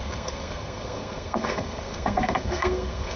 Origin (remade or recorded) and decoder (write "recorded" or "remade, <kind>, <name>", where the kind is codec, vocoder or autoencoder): remade, codec, SNAC